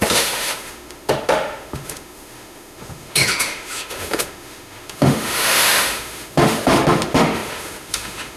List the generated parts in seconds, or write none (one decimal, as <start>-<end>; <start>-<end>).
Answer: 0.0-8.4